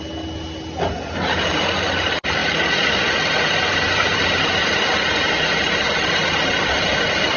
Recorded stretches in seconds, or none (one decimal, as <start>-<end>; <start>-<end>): 0.0-7.4

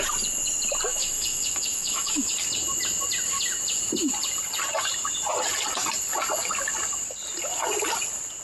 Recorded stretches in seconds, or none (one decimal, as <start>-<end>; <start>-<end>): 0.0-0.9; 2.3-8.4

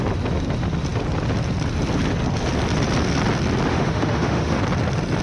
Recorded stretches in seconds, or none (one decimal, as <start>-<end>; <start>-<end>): 0.0-3.7; 4.6-5.2

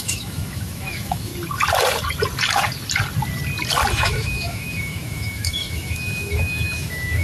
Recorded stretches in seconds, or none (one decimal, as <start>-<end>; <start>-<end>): 1.3-3.9

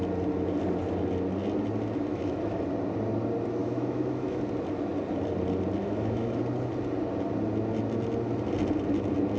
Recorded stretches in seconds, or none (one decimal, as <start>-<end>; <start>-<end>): 0.0-2.1; 2.6-3.6; 4.4-5.8; 6.4-9.4

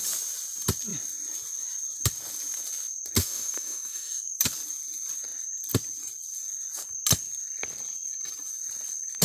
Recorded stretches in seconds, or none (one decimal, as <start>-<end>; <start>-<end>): 0.0-3.2; 4.4-9.2

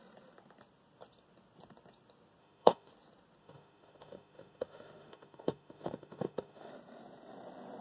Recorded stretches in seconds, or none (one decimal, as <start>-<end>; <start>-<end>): 0.0-2.4; 2.9-3.4; 6.7-7.8

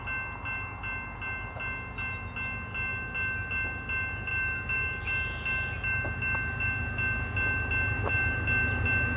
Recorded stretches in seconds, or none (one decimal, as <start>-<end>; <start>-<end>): 0.0-9.2